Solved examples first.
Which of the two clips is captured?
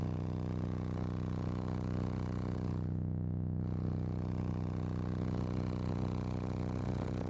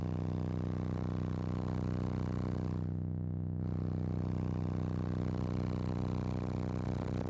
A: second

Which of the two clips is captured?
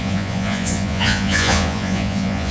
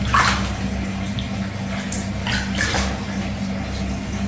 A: second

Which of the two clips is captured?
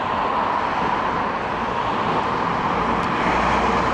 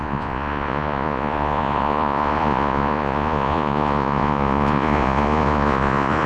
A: first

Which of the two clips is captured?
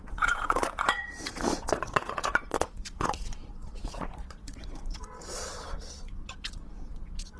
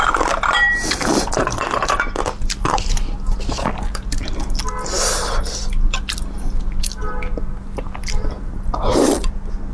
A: second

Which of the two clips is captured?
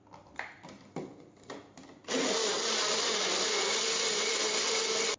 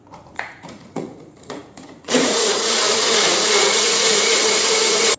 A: first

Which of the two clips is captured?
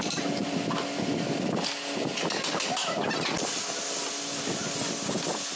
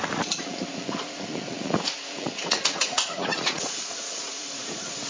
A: first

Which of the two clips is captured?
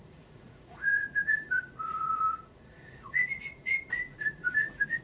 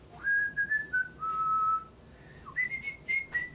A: second